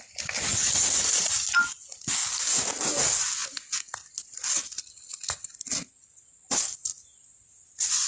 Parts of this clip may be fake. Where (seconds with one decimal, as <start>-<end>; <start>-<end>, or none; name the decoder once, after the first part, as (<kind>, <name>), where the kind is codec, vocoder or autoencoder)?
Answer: 0.6-1.2 (vocoder, BigVGAN v2)